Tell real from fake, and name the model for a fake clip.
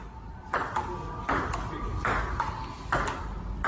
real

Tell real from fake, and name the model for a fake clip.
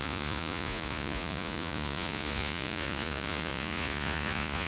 fake, vocoder, Vocos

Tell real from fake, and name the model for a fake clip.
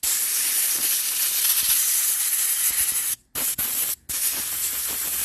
real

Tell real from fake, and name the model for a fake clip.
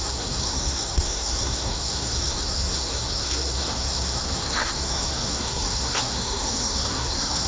fake, codec, SNAC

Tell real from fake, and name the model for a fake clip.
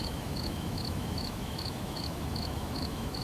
fake, autoencoder, DAC-VAE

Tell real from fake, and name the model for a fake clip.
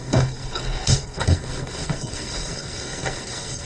fake, codec, SNAC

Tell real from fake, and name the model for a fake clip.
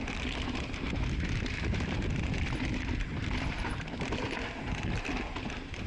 fake, vocoder, BigVGAN v2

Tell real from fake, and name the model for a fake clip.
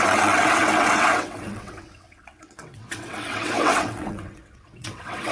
fake, vocoder, WaveNeXt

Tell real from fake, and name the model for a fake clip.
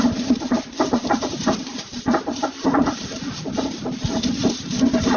real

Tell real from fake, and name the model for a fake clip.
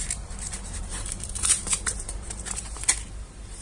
fake, vocoder, BigVGAN v2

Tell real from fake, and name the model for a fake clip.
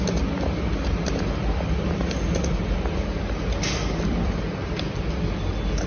real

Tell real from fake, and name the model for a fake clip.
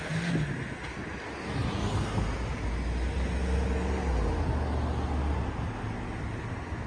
real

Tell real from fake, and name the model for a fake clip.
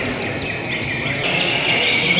real